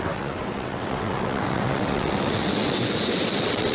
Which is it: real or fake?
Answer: fake